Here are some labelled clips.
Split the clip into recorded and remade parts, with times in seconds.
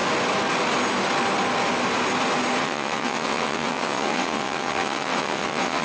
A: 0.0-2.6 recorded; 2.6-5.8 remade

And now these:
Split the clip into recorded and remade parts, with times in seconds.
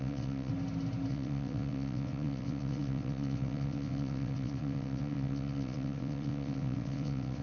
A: 0.0-0.5 remade; 0.5-1.1 recorded; 1.1-7.4 remade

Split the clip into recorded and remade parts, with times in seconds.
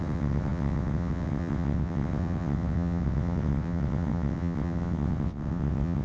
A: 0.0-6.0 remade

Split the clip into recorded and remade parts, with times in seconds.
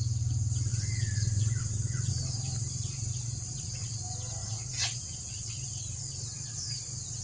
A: 0.0-0.7 recorded; 0.7-2.1 remade; 2.1-3.1 recorded; 3.1-4.0 remade; 4.0-4.4 recorded; 4.4-6.0 remade; 6.0-7.2 recorded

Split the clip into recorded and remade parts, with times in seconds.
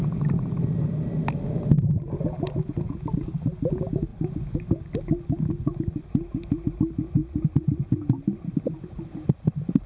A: 0.0-9.9 recorded